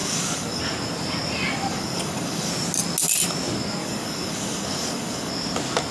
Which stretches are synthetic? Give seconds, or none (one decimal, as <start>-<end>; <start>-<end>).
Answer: 0.0-0.6; 1.7-2.5; 3.8-5.3